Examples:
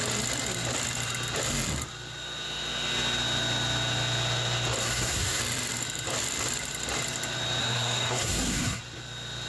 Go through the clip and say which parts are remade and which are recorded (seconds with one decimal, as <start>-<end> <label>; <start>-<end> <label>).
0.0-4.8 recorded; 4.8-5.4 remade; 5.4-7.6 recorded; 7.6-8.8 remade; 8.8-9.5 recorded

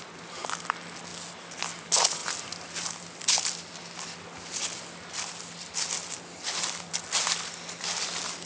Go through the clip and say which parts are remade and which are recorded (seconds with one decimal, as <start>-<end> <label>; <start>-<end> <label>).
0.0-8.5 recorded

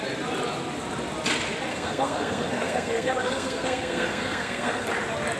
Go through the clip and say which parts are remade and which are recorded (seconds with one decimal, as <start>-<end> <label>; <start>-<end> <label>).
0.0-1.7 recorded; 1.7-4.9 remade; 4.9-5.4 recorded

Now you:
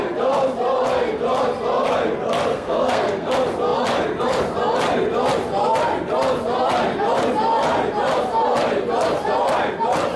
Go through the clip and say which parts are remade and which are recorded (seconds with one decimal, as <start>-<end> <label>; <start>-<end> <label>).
0.0-2.5 recorded; 2.5-3.3 remade; 3.3-10.2 recorded

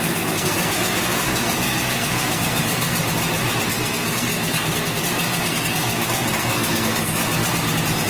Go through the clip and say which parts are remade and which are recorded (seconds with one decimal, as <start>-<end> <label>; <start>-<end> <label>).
0.0-3.0 remade; 3.0-3.7 recorded; 3.7-7.2 remade; 7.2-8.1 recorded

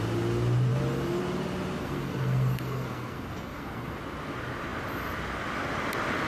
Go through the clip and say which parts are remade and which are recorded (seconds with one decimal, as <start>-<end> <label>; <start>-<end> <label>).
0.0-1.8 recorded; 1.8-4.0 remade; 4.0-6.3 recorded

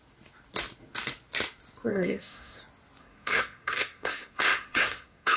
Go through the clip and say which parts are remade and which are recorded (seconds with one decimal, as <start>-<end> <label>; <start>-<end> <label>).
0.0-1.9 recorded; 1.9-2.6 remade; 2.6-3.0 recorded; 3.0-5.4 remade

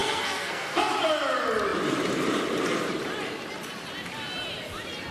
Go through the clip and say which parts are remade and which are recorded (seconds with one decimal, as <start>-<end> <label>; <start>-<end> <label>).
0.0-0.9 remade; 0.9-5.1 recorded